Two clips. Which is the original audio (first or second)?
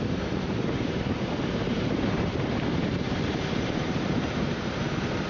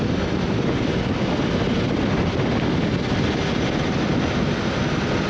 second